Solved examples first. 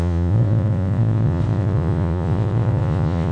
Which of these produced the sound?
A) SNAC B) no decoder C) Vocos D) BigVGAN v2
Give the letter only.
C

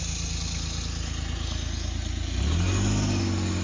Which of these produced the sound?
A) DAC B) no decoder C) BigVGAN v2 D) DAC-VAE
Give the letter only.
B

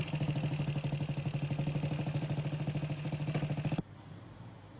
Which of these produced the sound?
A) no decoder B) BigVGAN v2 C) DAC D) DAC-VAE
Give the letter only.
A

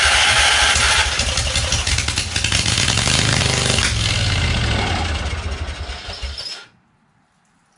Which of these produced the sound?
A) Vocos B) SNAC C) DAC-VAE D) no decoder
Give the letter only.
D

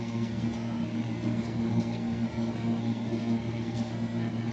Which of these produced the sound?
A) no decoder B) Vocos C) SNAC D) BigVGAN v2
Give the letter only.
C